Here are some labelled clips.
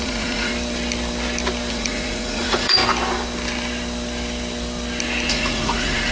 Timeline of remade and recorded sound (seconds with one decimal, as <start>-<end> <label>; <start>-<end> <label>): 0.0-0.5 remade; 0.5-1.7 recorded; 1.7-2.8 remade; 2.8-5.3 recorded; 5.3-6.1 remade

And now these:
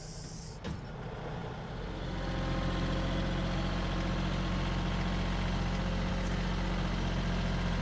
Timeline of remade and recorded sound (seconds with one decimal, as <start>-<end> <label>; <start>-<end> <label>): 0.0-7.8 recorded

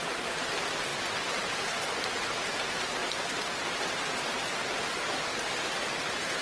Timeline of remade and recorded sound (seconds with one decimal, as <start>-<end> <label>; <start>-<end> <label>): 0.0-3.0 recorded; 3.0-6.4 remade

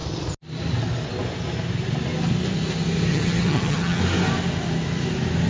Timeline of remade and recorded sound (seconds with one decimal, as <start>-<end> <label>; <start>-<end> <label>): 0.0-3.1 recorded; 3.1-4.0 remade; 4.0-5.5 recorded

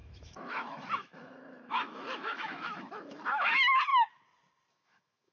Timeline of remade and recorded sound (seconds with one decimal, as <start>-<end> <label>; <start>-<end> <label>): 0.0-3.9 remade; 3.9-4.7 recorded; 4.7-5.3 remade

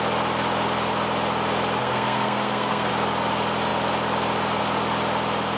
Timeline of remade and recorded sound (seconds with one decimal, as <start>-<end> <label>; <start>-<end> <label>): 0.0-1.8 recorded; 1.8-2.9 remade; 2.9-5.6 recorded

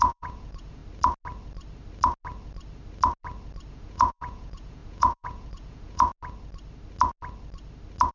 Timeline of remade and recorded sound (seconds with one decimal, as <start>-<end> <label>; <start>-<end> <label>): 0.0-0.8 remade; 0.8-3.7 recorded; 3.7-6.1 remade; 6.1-8.1 recorded